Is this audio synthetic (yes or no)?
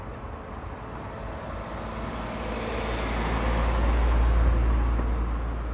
no